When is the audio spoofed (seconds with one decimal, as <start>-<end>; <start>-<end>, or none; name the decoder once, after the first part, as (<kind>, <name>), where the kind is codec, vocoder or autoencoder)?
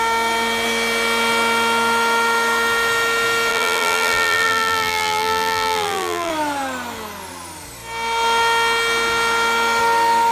3.5-6.3 (vocoder, BigVGAN v2)